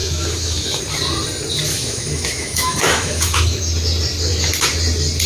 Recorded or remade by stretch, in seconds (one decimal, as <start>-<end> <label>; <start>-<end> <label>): 0.0-0.8 remade; 0.8-1.7 recorded; 1.7-3.6 remade; 3.6-5.3 recorded